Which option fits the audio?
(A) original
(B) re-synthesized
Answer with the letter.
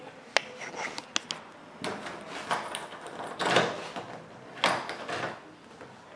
A